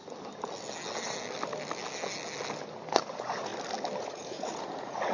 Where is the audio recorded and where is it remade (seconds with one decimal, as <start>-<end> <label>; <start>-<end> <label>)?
0.0-3.1 recorded; 3.1-3.5 remade; 3.5-4.0 recorded; 4.0-5.1 remade